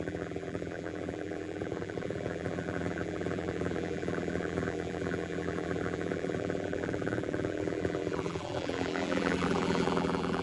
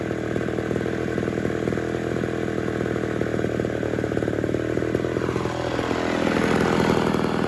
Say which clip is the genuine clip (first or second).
second